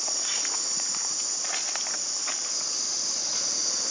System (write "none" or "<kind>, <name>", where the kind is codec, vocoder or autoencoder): none